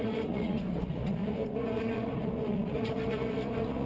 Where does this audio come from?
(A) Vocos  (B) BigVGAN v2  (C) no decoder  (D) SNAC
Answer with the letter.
A